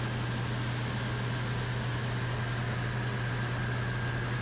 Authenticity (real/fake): real